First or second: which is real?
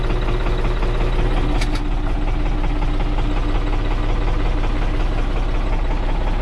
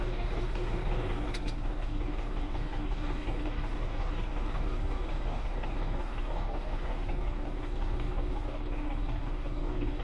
first